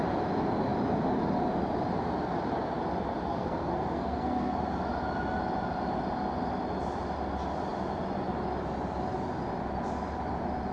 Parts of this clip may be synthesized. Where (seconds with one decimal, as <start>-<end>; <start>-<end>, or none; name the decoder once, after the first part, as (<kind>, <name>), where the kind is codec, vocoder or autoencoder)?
3.3-4.6 (codec, SNAC)